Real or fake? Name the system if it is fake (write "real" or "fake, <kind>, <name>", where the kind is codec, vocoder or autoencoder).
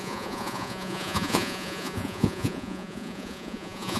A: fake, vocoder, Vocos